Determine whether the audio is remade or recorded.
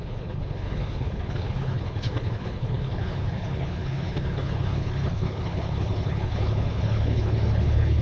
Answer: remade